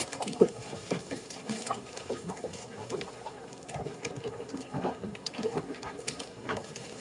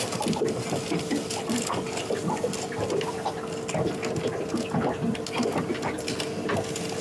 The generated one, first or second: first